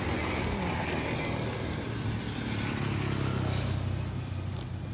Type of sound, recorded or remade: recorded